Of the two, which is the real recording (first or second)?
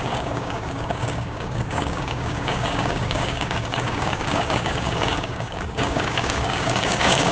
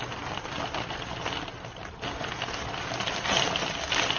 second